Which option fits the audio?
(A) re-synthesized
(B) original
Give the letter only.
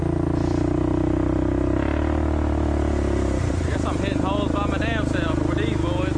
B